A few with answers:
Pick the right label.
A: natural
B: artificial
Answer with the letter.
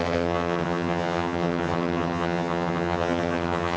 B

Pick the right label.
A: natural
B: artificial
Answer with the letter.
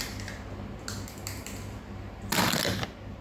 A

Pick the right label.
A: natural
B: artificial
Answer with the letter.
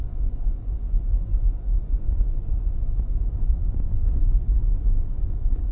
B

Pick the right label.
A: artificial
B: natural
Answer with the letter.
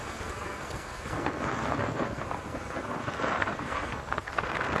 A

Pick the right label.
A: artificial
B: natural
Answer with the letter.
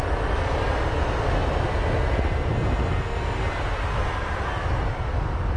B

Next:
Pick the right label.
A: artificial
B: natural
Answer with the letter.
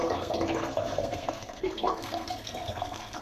A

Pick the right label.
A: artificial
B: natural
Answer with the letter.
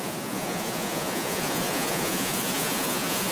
A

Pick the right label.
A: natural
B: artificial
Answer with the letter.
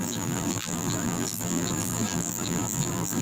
B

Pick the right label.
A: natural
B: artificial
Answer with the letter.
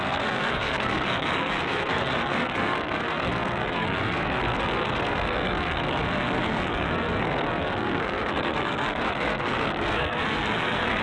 B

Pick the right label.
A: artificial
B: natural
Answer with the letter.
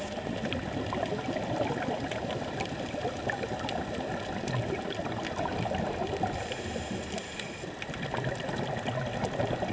B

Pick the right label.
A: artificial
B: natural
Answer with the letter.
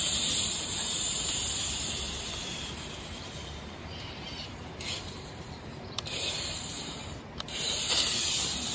A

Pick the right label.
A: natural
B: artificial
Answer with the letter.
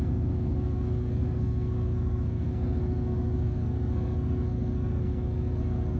B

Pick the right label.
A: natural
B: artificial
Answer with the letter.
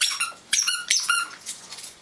B